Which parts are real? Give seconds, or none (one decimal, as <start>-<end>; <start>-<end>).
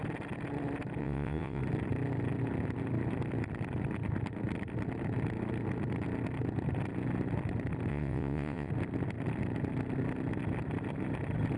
0.0-1.0; 1.6-7.9; 8.7-11.6